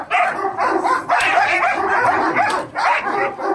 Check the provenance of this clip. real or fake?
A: fake